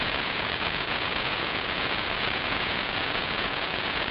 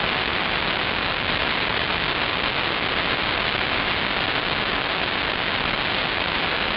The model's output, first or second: first